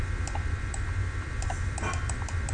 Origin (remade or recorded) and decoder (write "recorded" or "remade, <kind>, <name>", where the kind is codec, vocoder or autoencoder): remade, vocoder, BigVGAN v2